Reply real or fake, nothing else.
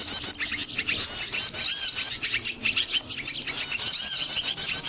real